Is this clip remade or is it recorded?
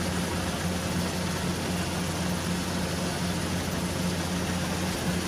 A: recorded